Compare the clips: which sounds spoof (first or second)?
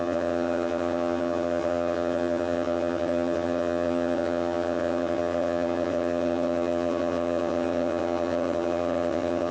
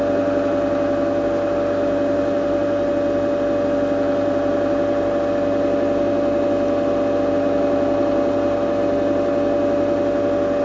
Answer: first